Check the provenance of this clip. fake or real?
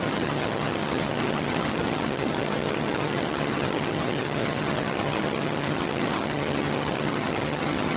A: fake